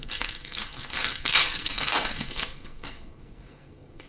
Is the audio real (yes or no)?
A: no